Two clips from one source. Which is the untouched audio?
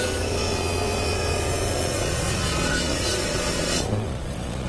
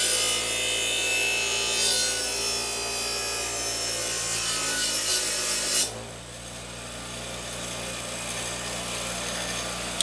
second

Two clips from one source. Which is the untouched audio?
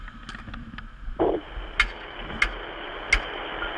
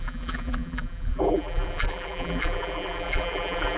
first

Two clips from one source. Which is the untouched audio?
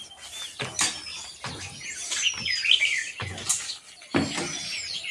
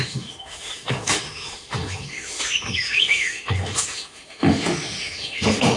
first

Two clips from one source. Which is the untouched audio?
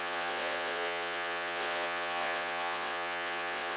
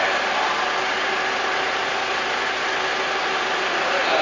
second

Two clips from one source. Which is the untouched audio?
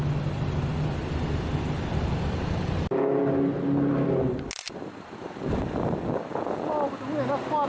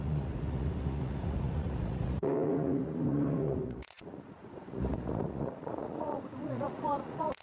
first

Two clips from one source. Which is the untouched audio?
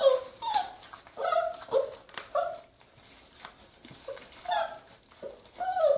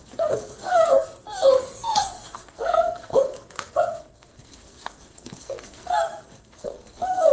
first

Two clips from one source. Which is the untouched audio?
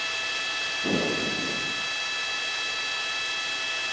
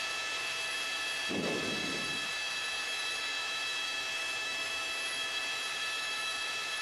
first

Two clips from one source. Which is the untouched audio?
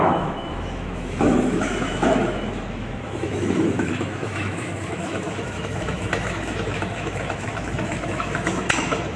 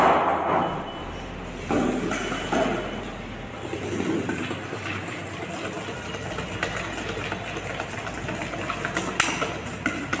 second